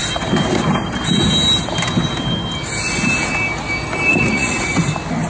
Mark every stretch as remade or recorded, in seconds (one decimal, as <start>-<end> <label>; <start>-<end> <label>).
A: 0.0-4.1 recorded; 4.1-4.8 remade; 4.8-5.3 recorded